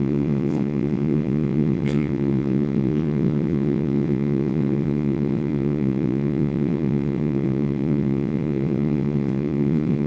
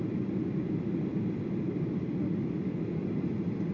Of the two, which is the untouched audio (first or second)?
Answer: second